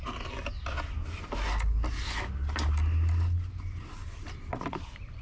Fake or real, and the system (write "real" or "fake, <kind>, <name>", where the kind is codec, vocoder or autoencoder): real